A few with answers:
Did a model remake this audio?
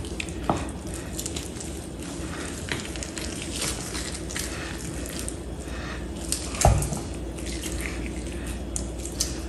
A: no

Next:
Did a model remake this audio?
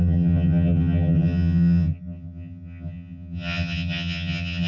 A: yes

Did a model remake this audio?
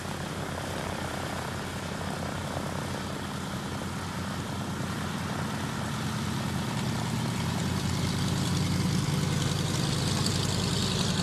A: no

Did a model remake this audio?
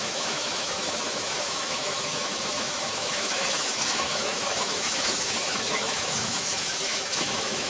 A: yes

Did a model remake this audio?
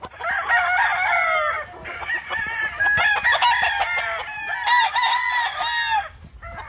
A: no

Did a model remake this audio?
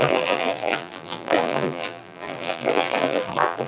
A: yes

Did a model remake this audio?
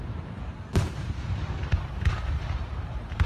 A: yes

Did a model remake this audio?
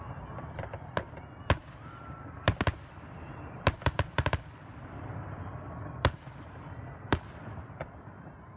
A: yes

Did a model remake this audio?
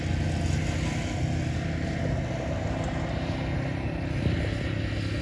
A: no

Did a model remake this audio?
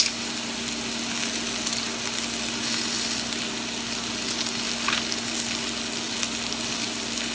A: no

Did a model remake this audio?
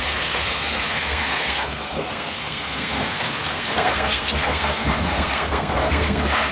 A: yes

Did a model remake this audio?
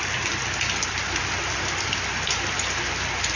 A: yes